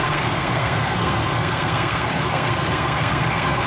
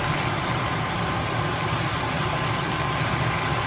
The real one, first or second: second